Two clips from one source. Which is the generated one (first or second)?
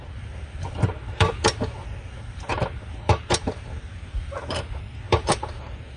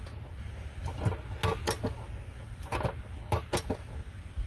first